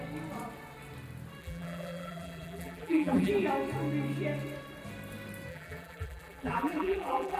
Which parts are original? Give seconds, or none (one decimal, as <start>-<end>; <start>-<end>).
0.0-1.4; 3.3-5.5